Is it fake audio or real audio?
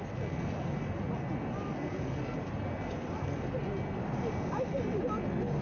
real